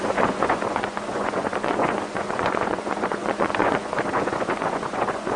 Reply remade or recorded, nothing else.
remade